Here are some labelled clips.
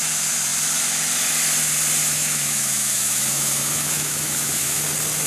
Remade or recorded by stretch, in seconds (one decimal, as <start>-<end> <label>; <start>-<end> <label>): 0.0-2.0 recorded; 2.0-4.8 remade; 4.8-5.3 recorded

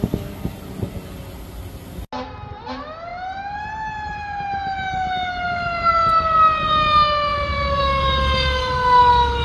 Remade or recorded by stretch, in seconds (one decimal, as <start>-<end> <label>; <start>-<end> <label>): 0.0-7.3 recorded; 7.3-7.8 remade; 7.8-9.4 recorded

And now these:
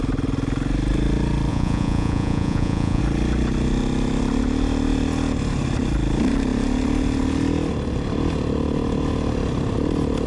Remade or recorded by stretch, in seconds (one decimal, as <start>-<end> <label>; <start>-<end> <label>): 0.0-1.5 recorded; 1.5-3.0 remade; 3.0-10.3 recorded

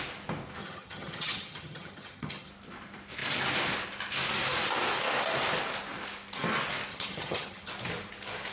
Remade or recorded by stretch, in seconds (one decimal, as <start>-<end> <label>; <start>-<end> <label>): 0.0-0.6 recorded; 0.6-2.5 remade; 2.5-6.9 recorded; 6.9-7.7 remade; 7.7-8.5 recorded